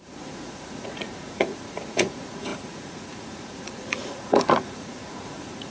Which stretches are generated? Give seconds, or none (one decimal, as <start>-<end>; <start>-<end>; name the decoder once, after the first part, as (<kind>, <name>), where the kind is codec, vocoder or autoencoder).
0.0-5.7 (vocoder, Vocos)